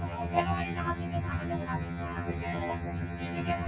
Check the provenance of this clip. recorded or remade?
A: remade